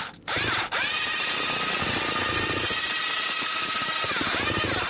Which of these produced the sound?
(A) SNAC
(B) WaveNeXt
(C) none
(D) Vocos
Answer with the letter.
C